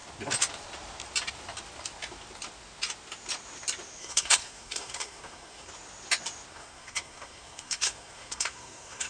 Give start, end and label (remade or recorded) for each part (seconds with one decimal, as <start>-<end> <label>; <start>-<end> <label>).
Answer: 0.0-4.0 recorded; 4.0-5.7 remade; 5.7-6.5 recorded; 6.5-9.1 remade